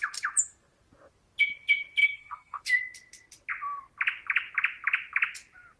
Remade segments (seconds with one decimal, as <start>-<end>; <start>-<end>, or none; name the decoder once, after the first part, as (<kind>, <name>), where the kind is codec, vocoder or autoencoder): 2.0-2.6 (codec, SNAC)